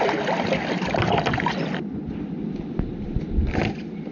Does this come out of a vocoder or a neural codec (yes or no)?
no